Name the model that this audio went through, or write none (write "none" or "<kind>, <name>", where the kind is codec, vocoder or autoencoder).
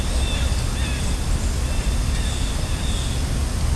none